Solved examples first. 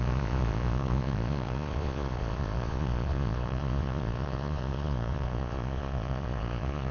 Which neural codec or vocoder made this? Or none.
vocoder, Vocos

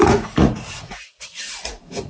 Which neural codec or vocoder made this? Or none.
vocoder, Vocos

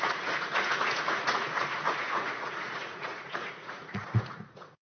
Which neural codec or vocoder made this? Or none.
vocoder, Vocos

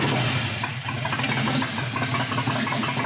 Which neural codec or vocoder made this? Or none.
none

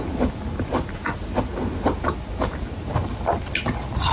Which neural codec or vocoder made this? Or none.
none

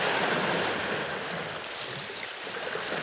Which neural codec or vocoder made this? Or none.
none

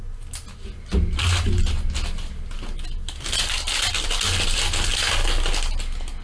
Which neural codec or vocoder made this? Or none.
none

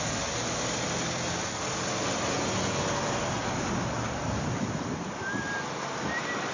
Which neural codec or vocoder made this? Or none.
none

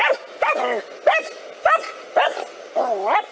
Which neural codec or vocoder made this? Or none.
none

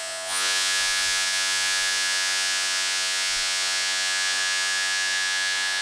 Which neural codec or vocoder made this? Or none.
vocoder, Vocos